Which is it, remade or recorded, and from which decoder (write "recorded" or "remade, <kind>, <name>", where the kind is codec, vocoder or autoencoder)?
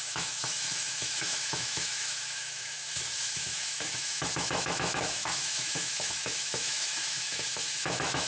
remade, autoencoder, DAC-VAE